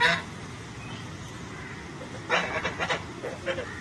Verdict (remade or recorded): recorded